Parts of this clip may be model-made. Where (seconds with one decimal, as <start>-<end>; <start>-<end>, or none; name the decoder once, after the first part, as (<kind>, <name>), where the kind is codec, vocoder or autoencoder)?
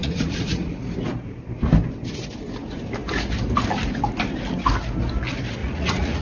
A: 0.0-0.8 (vocoder, Vocos); 5.6-6.2